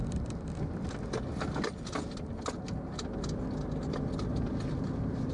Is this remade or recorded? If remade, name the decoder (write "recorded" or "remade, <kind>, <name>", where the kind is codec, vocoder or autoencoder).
recorded